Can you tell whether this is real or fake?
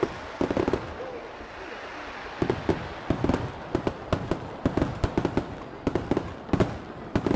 real